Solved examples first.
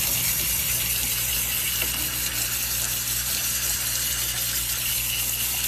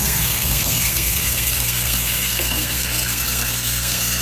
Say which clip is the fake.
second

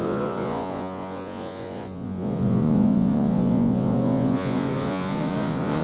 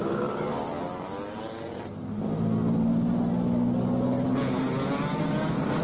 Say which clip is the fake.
first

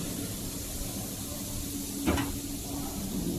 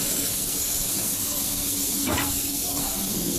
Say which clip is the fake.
second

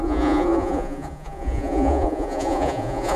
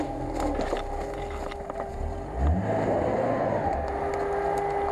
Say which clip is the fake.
first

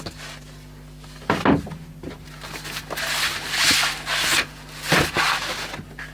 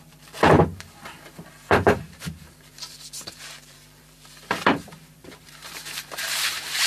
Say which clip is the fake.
second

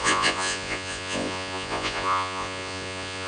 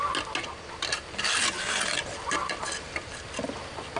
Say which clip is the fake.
first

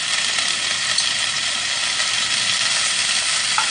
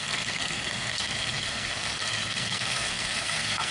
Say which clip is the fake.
second